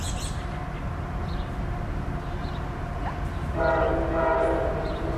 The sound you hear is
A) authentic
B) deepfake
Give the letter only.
A